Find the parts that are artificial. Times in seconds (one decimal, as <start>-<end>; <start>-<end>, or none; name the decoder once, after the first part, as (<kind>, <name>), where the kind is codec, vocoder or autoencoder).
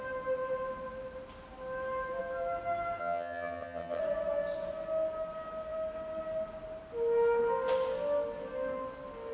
3.0-4.0 (vocoder, HiFi-GAN)